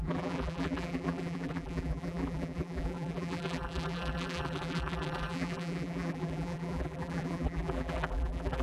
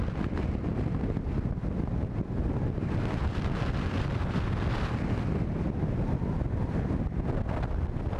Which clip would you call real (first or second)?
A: second